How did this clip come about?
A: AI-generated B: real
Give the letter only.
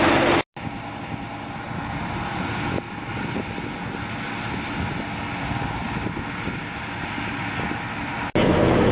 B